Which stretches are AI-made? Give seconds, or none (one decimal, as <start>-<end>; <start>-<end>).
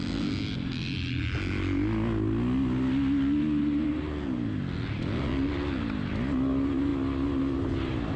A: none